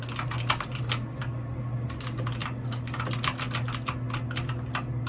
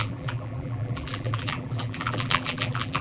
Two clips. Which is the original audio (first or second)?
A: first